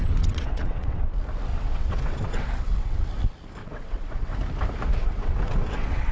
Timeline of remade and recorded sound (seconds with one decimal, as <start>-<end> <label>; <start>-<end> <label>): 0.0-1.0 remade; 1.0-1.5 recorded; 1.5-3.1 remade; 3.1-3.6 recorded; 3.6-4.3 remade; 4.3-5.0 recorded; 5.0-6.1 remade